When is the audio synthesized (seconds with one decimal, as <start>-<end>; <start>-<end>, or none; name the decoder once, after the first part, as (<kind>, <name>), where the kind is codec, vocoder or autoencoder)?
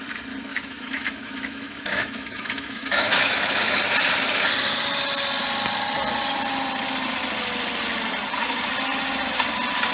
0.5-3.8 (autoencoder, DAC-VAE)